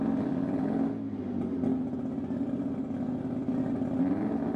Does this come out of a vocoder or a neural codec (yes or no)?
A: no